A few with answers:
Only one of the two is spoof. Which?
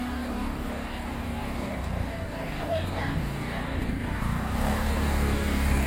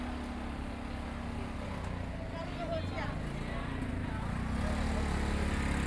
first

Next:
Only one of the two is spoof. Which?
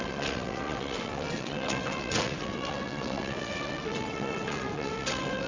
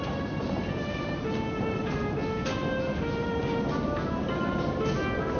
first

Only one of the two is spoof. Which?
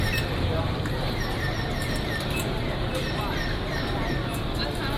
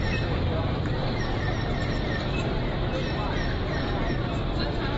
second